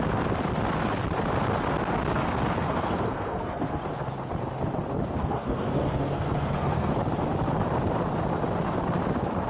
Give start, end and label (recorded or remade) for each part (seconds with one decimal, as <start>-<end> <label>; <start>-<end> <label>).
0.0-2.6 recorded; 2.6-3.8 remade; 3.8-5.2 recorded; 5.2-6.9 remade; 6.9-9.5 recorded